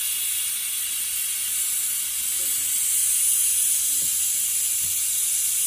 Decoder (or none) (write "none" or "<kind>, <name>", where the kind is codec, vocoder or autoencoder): none